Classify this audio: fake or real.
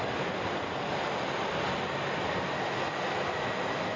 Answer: real